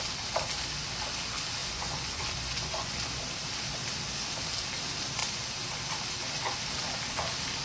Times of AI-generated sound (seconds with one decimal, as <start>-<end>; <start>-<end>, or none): 1.6-3.2